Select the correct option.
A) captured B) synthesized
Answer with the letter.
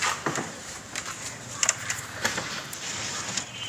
B